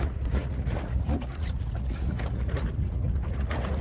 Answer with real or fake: fake